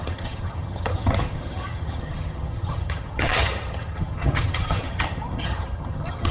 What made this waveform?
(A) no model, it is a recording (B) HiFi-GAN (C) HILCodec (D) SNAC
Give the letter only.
B